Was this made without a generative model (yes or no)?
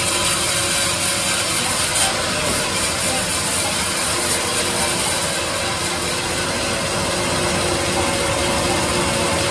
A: yes